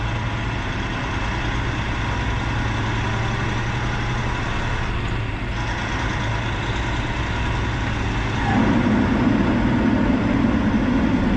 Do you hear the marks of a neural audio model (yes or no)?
no